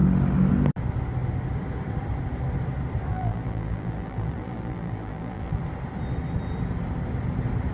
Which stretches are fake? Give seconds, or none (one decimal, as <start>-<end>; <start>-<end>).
3.1-5.6